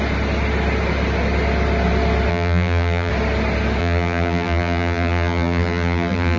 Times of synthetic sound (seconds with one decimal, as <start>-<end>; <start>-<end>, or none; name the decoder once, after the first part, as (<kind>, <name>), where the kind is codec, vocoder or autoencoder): 2.3-3.1 (vocoder, BigVGAN v2); 3.8-6.4

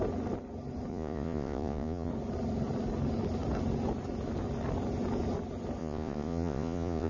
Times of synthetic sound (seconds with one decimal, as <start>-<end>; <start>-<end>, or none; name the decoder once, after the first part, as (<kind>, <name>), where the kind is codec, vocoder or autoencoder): 0.9-2.1 (vocoder, Vocos); 5.8-7.1